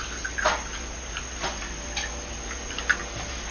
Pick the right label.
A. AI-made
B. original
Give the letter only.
B